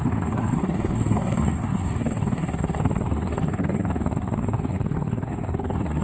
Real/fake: fake